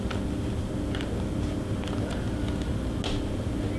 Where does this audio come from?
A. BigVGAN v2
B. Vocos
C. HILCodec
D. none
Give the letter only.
D